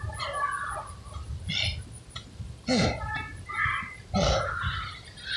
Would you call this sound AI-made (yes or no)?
no